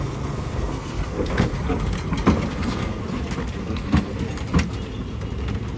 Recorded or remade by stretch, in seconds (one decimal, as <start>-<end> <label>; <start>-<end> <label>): 0.0-1.5 remade; 1.5-2.5 recorded; 2.5-3.0 remade; 3.0-3.6 recorded; 3.6-4.1 remade; 4.1-5.8 recorded

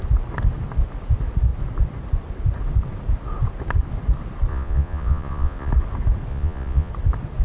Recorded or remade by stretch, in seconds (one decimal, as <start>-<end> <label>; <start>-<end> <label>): 0.0-4.5 recorded; 4.5-5.7 remade; 5.7-6.3 recorded; 6.3-6.9 remade; 6.9-7.4 recorded

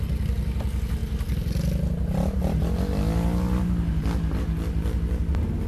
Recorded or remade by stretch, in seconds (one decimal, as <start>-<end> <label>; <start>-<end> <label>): 0.0-5.7 recorded